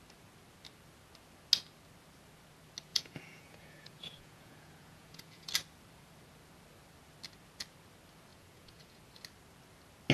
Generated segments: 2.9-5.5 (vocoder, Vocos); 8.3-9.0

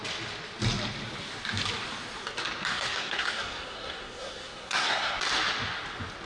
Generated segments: 2.7-5.2 (codec, SNAC)

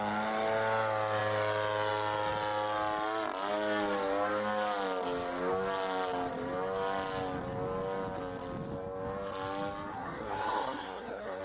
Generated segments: 9.9-11.4 (codec, SNAC)